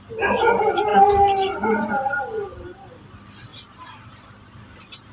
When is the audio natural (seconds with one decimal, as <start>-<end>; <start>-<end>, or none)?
0.0-0.9; 1.9-3.5